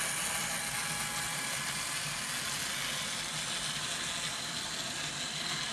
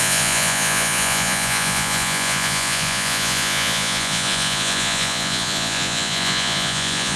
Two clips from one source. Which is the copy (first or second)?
second